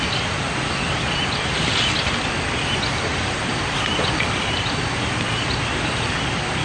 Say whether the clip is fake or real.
real